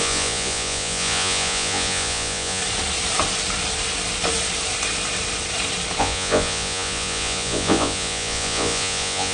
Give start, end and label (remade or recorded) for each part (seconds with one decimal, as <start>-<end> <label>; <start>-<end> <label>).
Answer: 0.0-2.6 remade; 2.6-6.0 recorded; 6.0-9.3 remade